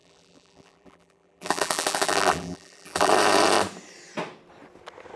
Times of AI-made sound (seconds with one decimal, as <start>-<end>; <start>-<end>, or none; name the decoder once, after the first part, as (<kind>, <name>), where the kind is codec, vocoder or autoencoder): 0.0-3.1 (vocoder, BigVGAN v2)